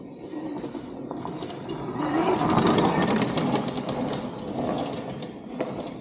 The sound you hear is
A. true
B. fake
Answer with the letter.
A